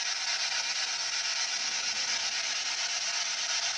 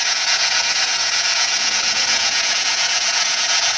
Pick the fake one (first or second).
second